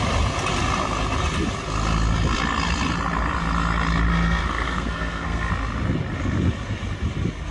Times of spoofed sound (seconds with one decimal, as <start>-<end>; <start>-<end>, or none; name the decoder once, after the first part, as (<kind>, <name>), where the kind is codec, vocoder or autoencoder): 4.1-5.5 (codec, SNAC)